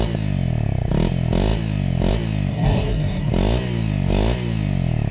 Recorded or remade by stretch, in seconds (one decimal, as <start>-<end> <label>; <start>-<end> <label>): 0.0-2.5 recorded; 2.5-3.3 remade; 3.3-5.1 recorded